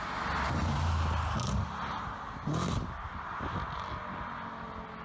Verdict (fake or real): real